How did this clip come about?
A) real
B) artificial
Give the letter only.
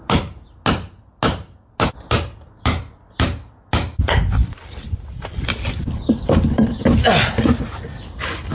A